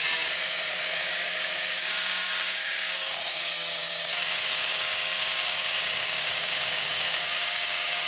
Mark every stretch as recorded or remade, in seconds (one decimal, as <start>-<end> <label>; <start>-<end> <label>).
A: 0.0-8.1 remade